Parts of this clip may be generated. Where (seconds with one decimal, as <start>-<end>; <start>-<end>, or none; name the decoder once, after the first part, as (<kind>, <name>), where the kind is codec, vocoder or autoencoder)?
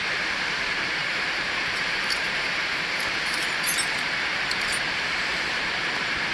1.0-4.8 (vocoder, BigVGAN v2)